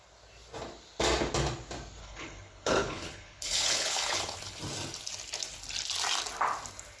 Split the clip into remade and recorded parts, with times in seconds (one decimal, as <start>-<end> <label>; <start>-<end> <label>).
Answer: 0.0-2.0 recorded; 2.0-4.6 remade; 4.6-7.0 recorded